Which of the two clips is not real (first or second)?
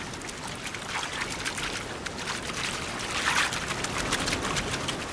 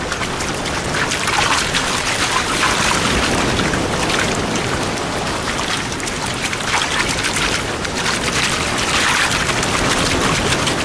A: second